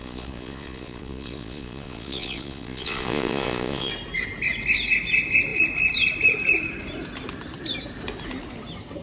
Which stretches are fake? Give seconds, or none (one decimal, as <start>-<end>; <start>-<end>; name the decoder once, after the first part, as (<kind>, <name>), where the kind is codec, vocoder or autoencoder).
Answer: 0.0-3.9 (vocoder, Vocos)